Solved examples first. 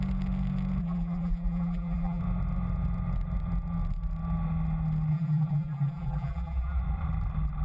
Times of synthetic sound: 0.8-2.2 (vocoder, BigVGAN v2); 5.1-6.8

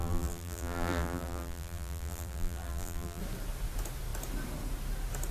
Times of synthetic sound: 0.0-3.2 (vocoder, BigVGAN v2)

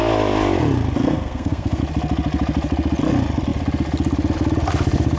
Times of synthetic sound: 1.0-1.8 (codec, SNAC)